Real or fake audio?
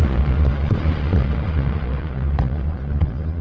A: fake